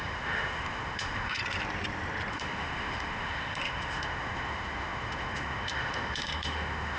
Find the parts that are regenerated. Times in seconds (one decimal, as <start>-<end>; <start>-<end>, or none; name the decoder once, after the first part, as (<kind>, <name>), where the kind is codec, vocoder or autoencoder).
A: 0.0-1.4 (autoencoder, DAC-VAE); 2.3-7.0